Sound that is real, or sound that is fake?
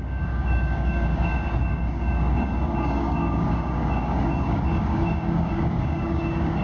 fake